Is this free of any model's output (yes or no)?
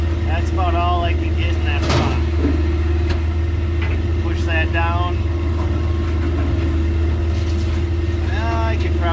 yes